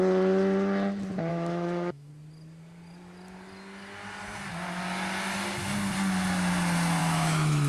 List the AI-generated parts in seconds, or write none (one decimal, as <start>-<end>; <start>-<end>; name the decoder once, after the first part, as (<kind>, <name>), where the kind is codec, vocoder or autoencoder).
1.3-2.1 (autoencoder, DAC-VAE); 7.0-7.7